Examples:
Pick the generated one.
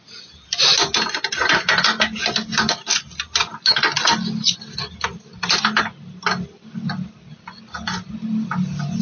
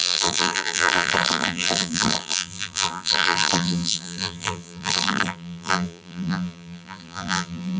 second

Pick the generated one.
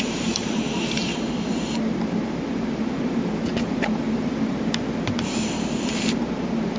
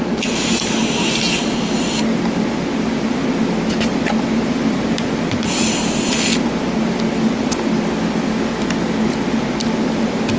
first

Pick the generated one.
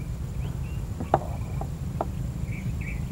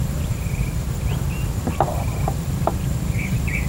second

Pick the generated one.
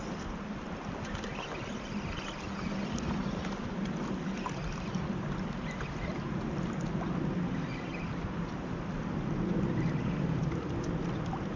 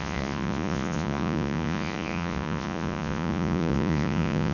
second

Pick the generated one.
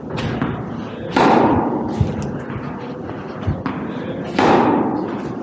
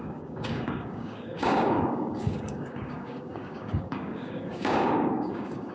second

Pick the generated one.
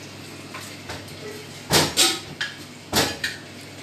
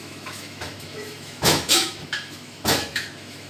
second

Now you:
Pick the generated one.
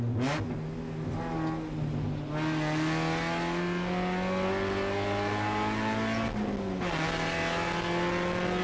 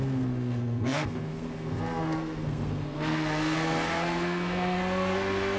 second